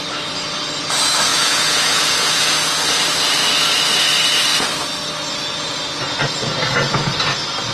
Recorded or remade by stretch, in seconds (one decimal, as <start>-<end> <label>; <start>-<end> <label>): 0.0-1.3 recorded; 1.3-2.7 remade; 2.7-7.7 recorded